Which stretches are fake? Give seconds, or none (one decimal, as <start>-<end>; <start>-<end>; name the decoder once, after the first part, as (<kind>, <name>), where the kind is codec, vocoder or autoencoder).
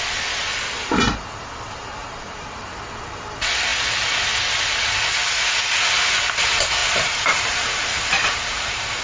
2.0-2.7 (vocoder, BigVGAN v2); 6.8-9.0